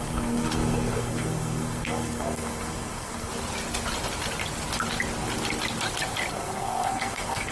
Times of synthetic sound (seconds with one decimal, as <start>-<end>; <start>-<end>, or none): 0.0-3.3; 6.3-7.5